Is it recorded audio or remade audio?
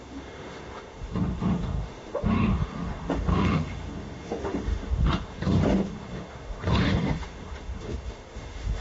remade